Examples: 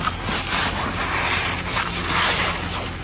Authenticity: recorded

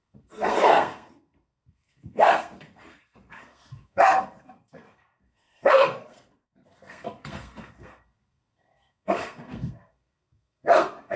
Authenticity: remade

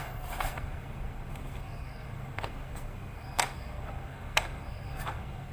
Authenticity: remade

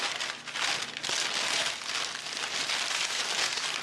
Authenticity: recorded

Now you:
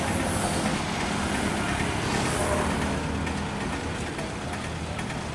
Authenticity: recorded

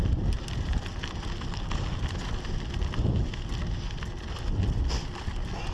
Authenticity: recorded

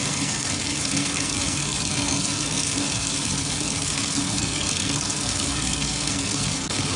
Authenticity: remade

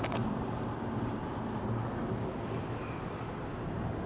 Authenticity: recorded